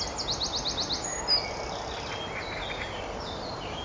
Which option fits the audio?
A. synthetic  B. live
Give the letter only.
B